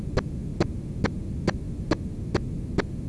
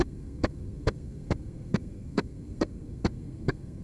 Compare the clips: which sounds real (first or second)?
first